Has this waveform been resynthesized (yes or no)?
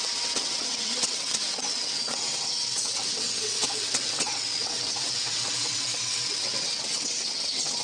yes